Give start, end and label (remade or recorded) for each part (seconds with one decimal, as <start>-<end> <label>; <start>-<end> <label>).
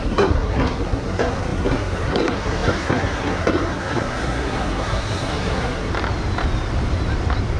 0.0-5.9 remade; 5.9-7.6 recorded